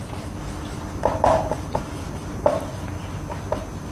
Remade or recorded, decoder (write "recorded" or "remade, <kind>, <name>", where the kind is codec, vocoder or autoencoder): recorded